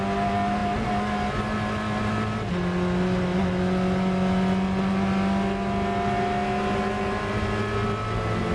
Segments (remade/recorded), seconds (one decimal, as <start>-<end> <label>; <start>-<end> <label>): 0.0-8.5 recorded